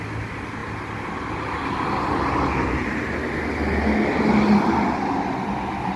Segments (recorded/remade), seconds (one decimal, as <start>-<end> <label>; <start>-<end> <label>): 0.0-6.0 recorded